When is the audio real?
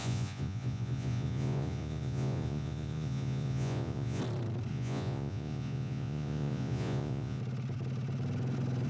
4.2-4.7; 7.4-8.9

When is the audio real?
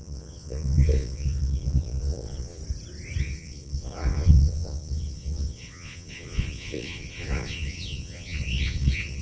2.6-3.2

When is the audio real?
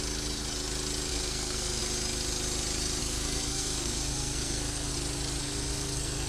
0.0-1.1; 1.8-3.0; 4.9-5.4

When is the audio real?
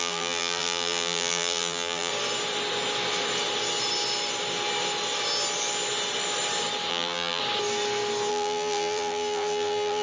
2.1-6.9; 7.4-8.3